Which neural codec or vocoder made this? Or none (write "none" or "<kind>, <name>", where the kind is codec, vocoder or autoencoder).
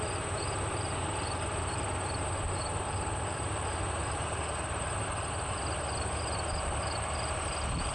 vocoder, BigVGAN v2